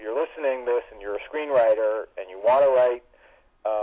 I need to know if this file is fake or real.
real